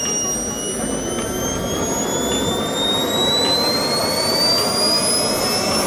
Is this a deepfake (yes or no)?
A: no